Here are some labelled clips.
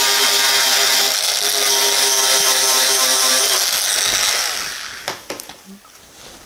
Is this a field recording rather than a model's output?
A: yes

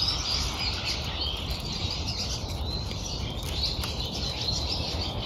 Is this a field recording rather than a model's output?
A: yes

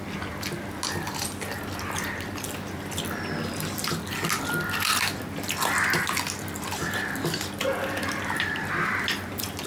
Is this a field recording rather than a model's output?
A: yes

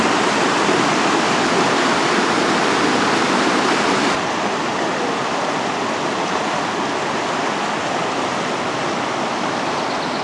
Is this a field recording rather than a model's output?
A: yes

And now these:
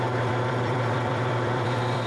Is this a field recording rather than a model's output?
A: no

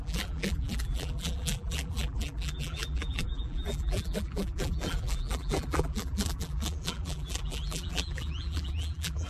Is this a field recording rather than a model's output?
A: no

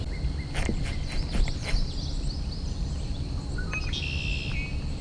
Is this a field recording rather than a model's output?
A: yes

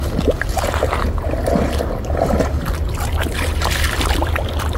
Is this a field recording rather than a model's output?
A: yes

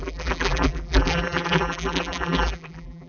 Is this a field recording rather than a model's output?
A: no